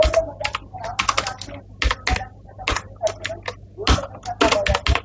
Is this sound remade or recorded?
recorded